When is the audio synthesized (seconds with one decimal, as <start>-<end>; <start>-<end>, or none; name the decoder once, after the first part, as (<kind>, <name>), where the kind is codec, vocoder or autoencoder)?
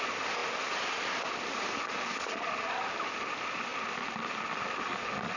none